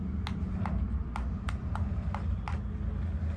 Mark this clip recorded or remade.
recorded